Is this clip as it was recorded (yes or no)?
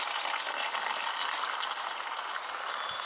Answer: yes